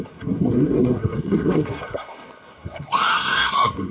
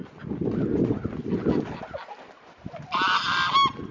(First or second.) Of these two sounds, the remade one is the first